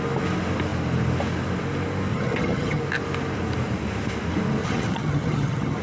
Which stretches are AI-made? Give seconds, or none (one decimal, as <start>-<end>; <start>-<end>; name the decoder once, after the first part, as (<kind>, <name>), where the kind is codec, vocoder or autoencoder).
2.1-2.8 (vocoder, HiFi-GAN); 4.6-5.8